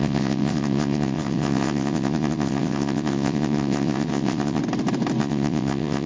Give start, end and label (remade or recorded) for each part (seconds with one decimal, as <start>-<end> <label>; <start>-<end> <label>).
0.0-4.6 remade; 4.6-5.2 recorded; 5.2-6.1 remade